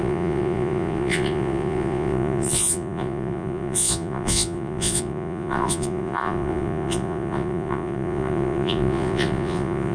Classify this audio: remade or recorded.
remade